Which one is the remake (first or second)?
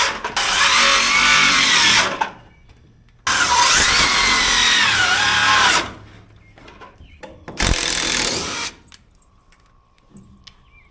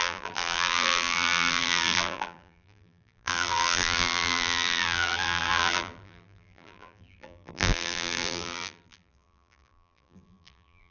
second